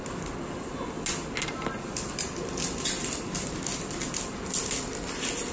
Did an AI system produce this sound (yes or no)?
no